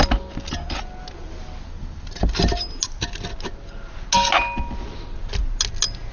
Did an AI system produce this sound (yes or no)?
no